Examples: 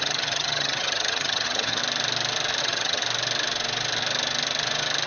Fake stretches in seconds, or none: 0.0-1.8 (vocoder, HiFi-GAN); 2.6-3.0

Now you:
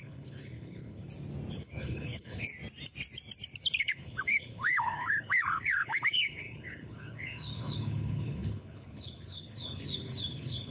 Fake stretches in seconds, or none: 0.0-1.0 (codec, HILCodec); 1.5-2.5; 3.8-10.7

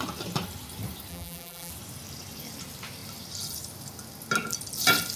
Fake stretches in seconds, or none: 1.1-1.7 (vocoder, BigVGAN v2)

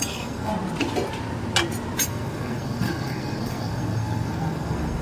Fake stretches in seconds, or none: 0.0-0.5 (codec, SNAC); 2.1-5.0

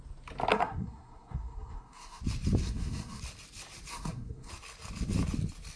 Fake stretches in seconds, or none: 0.5-2.2 (codec, SNAC); 2.6-3.2; 3.9-4.5

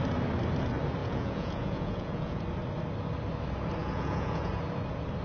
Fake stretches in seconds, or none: 1.0-2.4 (vocoder, Vocos); 3.8-4.5

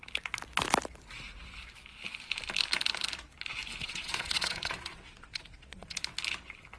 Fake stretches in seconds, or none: 3.8-6.0 (vocoder, Vocos)

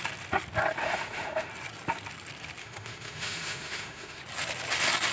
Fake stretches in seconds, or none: 0.8-1.5 (autoencoder, DAC-VAE); 2.6-4.2